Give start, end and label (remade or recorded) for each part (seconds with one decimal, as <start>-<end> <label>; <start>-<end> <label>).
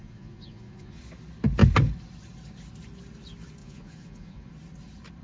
0.0-1.0 remade; 1.0-3.6 recorded; 3.6-4.5 remade; 4.5-5.2 recorded